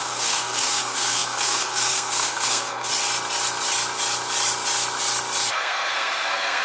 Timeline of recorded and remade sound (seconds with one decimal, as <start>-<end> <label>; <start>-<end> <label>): 0.0-2.9 remade; 2.9-5.5 recorded; 5.5-6.6 remade

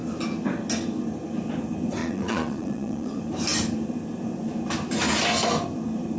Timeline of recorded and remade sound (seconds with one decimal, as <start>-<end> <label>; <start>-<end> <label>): 0.0-2.0 recorded; 2.0-3.2 remade; 3.2-6.2 recorded

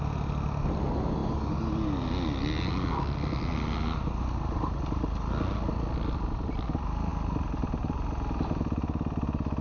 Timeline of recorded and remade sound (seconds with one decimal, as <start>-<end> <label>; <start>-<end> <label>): 0.0-9.6 recorded

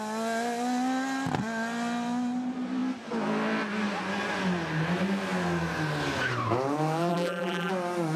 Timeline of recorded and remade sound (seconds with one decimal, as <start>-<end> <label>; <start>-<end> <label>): 0.0-7.1 recorded; 7.1-7.7 remade; 7.7-8.2 recorded

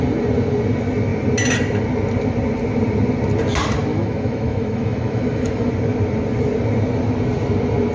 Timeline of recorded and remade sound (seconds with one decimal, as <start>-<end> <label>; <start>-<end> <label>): 0.0-3.9 recorded; 3.9-5.7 remade; 5.7-7.9 recorded

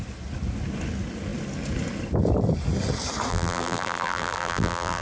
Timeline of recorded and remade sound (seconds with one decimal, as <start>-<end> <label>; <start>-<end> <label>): 0.0-3.3 recorded; 3.3-5.0 remade